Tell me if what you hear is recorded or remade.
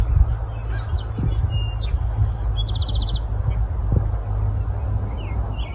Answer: recorded